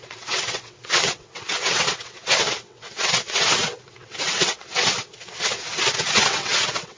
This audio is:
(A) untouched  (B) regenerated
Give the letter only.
B